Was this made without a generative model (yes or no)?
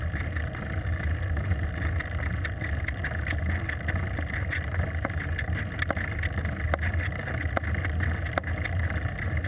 yes